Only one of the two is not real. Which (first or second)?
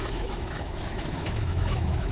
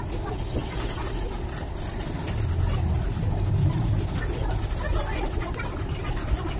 first